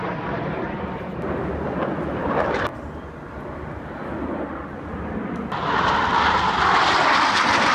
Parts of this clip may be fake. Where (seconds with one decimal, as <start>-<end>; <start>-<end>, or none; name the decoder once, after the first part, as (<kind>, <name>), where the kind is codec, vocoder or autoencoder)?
0.0-1.5 (vocoder, BigVGAN v2)